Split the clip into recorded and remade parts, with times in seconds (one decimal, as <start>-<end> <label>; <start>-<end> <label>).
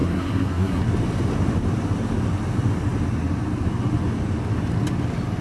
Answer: 0.0-0.8 remade; 0.8-5.4 recorded